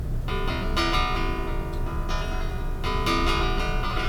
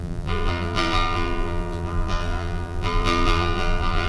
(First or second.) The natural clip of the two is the first